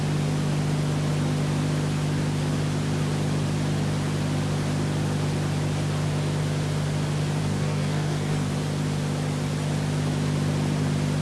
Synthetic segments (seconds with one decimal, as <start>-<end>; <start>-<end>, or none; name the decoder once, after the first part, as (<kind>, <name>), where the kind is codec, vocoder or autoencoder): 7.4-8.5 (codec, SNAC)